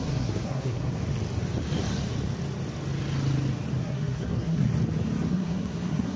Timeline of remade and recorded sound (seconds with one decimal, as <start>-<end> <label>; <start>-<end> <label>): 0.0-1.0 remade; 1.0-3.8 recorded; 3.8-4.7 remade; 4.7-5.3 recorded; 5.3-6.2 remade